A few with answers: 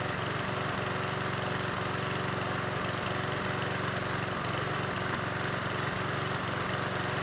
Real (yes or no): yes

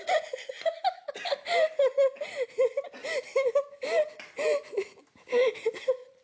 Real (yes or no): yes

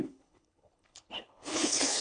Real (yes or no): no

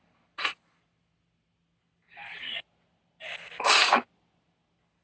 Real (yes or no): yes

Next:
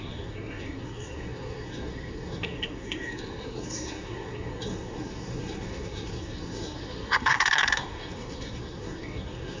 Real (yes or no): no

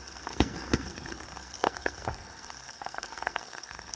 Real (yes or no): no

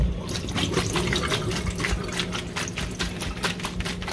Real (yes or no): yes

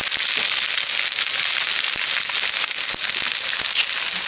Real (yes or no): yes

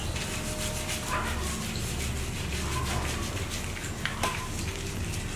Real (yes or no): yes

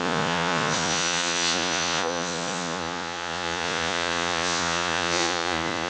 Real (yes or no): no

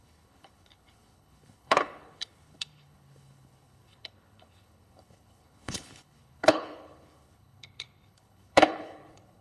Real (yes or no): no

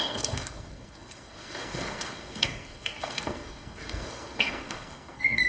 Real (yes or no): no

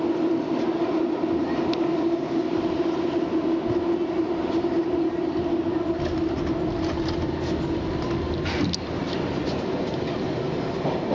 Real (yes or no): yes